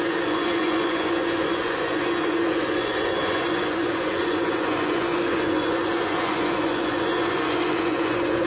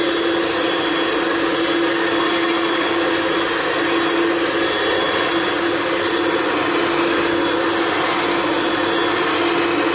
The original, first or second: second